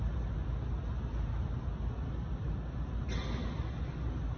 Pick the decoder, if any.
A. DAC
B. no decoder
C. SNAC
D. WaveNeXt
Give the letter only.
B